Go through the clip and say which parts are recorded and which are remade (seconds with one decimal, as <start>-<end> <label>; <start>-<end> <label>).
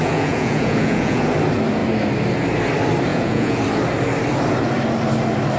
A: 0.0-1.2 remade; 1.2-3.1 recorded; 3.1-3.6 remade; 3.6-5.6 recorded